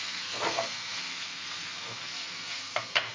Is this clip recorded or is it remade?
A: remade